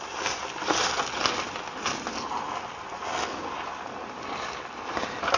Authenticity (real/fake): real